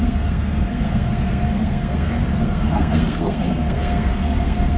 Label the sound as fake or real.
fake